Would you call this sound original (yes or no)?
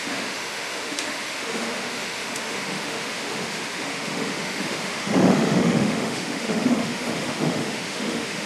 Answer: no